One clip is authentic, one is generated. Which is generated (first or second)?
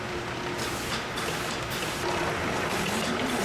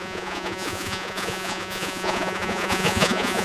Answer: second